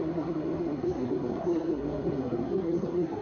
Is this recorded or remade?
remade